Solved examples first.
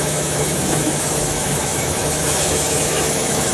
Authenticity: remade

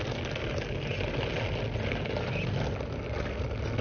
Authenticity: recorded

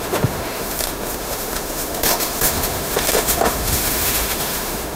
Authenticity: remade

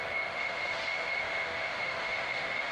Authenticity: remade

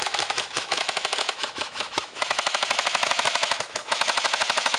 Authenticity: remade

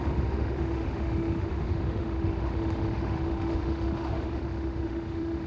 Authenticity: remade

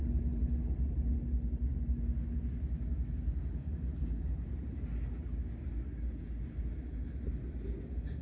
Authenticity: recorded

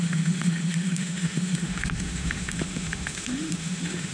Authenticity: remade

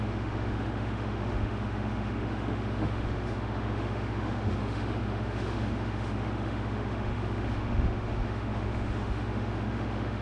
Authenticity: remade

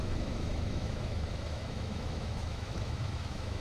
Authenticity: remade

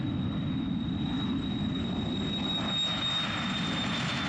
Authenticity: recorded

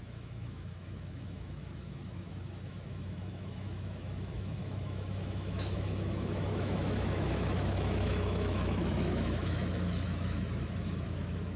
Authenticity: remade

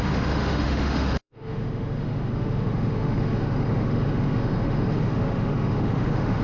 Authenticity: remade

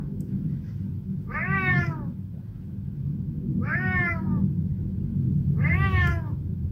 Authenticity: remade